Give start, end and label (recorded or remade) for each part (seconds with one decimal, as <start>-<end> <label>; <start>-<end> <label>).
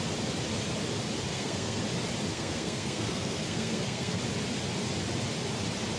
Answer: 0.0-1.3 recorded; 1.3-1.8 remade; 1.8-2.3 recorded; 2.3-4.2 remade; 4.2-6.0 recorded